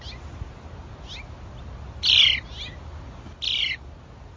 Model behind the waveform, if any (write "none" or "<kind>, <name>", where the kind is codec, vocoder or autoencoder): none